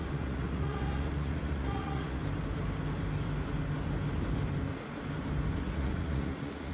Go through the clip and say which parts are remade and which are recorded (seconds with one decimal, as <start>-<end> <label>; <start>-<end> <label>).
0.0-2.2 remade; 2.2-5.6 recorded; 5.6-6.7 remade